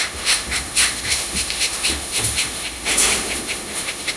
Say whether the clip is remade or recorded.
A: remade